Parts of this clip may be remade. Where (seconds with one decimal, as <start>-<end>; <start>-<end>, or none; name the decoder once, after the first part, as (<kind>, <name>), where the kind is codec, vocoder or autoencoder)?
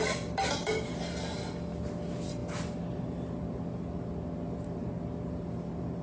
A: none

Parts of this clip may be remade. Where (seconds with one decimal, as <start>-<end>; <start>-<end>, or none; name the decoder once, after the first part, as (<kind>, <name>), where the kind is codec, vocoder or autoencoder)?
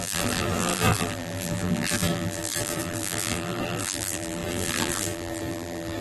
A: 0.0-6.0 (vocoder, BigVGAN v2)